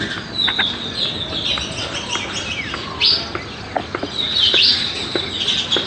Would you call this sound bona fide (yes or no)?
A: yes